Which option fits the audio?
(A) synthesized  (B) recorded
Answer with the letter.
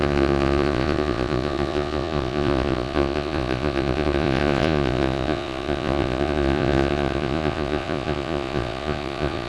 A